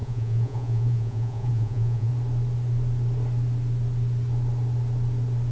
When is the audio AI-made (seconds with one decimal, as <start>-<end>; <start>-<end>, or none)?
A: 0.0-2.1